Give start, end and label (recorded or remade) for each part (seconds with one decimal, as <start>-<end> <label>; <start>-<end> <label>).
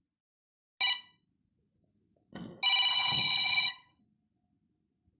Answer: 0.0-2.9 recorded; 2.9-4.0 remade; 4.0-5.2 recorded